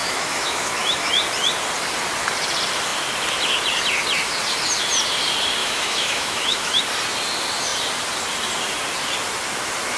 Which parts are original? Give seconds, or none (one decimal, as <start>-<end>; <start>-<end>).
1.1-5.6; 6.8-10.0